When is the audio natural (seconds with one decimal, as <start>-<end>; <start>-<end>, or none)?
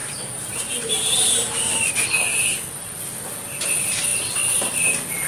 1.9-2.3; 3.0-5.3